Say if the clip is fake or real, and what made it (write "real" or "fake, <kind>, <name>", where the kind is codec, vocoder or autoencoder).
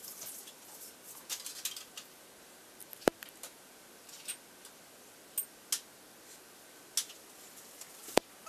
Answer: real